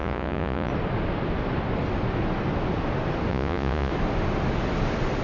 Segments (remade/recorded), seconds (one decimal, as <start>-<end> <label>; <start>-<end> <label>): 0.0-0.7 remade; 0.7-3.3 recorded; 3.3-3.9 remade; 3.9-5.2 recorded